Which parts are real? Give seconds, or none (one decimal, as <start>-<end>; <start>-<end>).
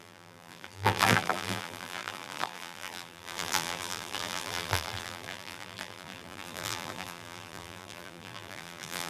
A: none